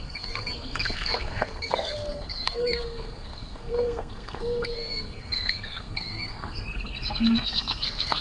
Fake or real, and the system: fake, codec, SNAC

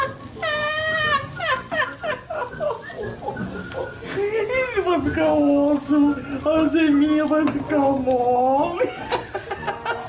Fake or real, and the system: real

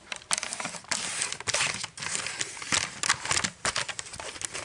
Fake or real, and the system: real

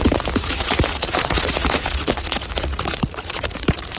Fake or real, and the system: fake, vocoder, Vocos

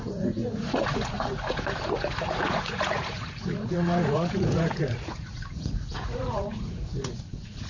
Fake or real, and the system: fake, vocoder, Vocos